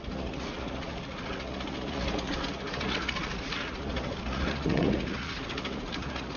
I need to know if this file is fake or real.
fake